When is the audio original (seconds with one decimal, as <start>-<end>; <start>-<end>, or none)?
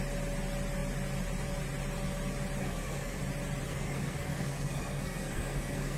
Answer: 0.0-2.6; 3.2-3.7